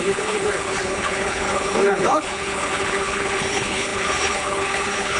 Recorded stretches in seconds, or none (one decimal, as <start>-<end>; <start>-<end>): none